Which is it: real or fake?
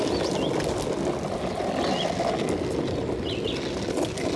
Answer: real